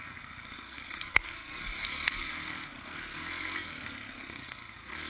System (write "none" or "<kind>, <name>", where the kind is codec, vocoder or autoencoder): codec, SNAC